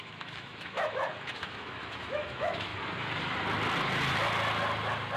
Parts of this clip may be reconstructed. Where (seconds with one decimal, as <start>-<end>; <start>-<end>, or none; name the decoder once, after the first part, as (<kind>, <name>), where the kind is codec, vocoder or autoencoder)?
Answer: 0.0-2.7 (autoencoder, DAC-VAE)